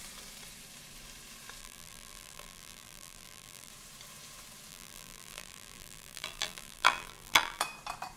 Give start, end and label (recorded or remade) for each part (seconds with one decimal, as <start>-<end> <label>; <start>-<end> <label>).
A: 0.0-1.6 recorded; 1.6-3.7 remade; 3.7-4.7 recorded; 4.7-7.6 remade; 7.6-8.2 recorded